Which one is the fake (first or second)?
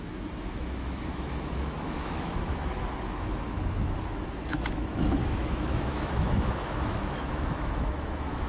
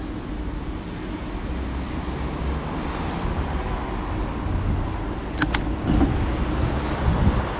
first